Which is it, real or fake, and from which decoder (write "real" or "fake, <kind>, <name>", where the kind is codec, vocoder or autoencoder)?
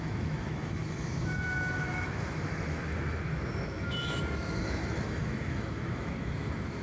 fake, autoencoder, DAC-VAE